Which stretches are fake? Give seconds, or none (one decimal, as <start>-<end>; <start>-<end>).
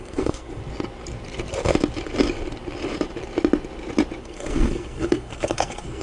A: 0.0-0.6; 4.2-6.0